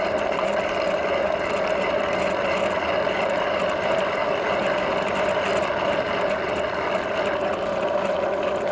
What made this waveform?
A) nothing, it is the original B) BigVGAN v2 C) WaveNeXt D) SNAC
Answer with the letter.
A